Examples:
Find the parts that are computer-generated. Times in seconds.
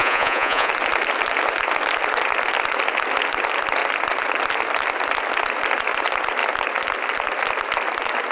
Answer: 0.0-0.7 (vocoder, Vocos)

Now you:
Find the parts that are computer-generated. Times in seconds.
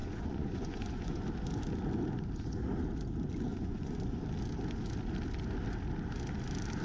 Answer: 0.0-1.2 (vocoder, Vocos); 3.5-4.2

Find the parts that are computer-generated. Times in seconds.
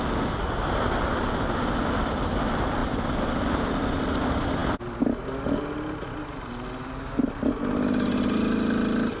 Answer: none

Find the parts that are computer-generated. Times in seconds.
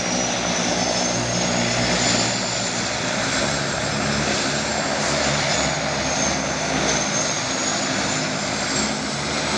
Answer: none